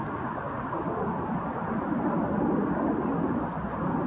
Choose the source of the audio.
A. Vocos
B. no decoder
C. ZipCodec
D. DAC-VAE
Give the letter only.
B